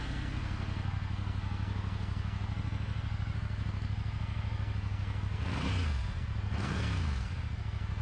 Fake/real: fake